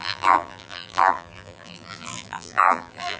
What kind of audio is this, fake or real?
fake